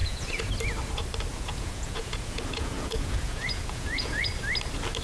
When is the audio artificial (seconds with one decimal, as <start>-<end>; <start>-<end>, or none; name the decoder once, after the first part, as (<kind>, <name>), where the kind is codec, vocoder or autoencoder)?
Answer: 0.0-0.5 (vocoder, Vocos); 1.3-4.3